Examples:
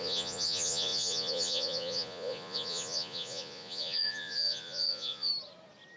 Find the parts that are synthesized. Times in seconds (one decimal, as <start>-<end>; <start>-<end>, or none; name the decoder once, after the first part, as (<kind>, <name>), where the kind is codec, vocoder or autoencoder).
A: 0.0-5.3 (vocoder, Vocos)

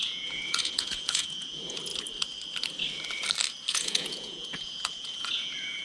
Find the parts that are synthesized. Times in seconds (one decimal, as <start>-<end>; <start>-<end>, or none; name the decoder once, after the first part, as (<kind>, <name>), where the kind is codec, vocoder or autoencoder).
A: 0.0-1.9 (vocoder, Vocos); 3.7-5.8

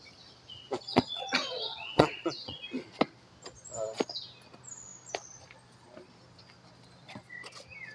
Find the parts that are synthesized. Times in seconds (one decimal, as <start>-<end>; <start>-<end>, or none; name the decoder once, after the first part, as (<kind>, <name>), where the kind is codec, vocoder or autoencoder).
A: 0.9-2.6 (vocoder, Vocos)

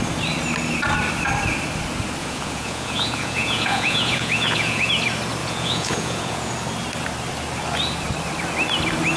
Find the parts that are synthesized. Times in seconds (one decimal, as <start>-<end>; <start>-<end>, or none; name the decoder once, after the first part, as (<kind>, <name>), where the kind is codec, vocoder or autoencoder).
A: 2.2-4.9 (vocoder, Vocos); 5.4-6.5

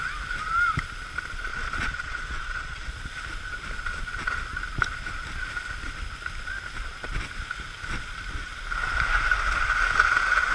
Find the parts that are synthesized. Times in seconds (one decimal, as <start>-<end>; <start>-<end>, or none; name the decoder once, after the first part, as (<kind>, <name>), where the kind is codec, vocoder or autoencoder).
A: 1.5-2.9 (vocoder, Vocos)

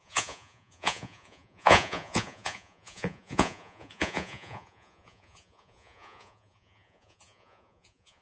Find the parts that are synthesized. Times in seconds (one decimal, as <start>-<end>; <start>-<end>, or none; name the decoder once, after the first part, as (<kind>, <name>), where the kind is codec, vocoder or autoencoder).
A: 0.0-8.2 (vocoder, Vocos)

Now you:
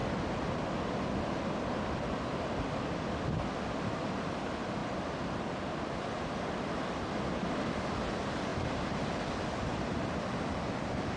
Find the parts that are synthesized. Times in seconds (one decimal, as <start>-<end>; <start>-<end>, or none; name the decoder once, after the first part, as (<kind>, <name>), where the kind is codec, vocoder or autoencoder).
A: none

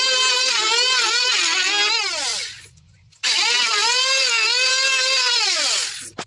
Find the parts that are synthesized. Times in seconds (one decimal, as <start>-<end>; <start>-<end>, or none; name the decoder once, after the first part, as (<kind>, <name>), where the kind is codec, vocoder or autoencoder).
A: 2.3-3.1 (vocoder, Vocos)